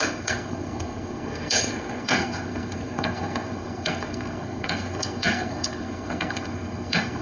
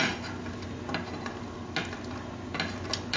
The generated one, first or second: first